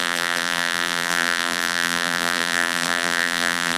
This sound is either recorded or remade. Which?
remade